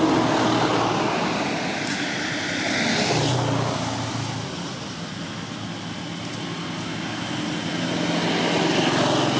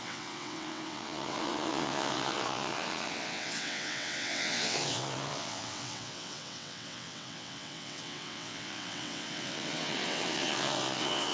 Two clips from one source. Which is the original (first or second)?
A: first